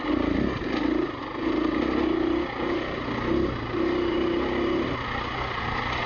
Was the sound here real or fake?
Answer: real